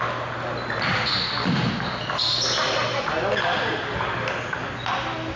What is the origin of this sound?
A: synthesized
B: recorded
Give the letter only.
B